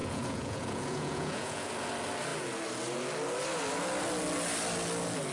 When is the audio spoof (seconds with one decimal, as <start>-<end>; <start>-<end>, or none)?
0.0-1.7